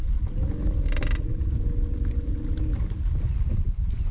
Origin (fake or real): real